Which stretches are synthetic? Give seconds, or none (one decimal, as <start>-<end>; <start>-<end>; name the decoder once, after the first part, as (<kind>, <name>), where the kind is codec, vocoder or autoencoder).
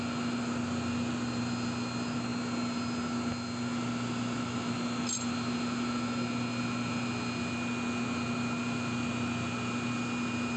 none